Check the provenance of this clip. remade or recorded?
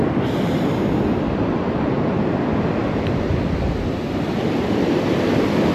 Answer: recorded